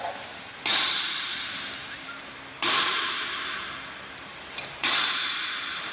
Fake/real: fake